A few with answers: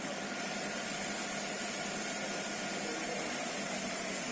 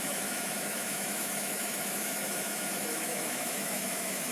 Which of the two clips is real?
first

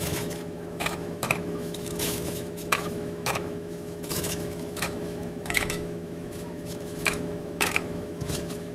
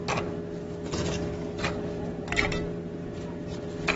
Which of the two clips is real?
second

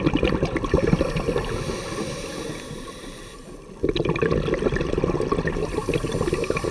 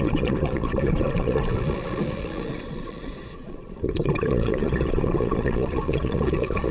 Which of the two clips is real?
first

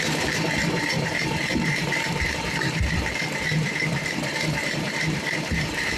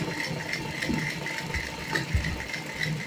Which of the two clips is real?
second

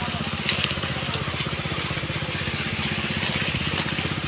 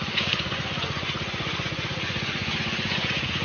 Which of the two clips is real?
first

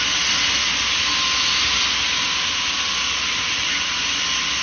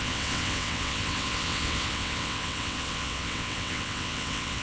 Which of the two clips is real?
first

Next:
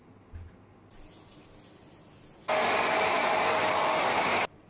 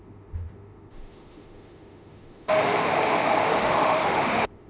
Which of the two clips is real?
first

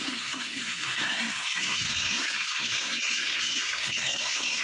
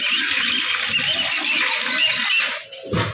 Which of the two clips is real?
second